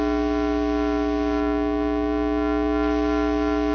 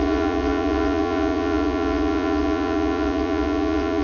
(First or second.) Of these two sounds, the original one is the first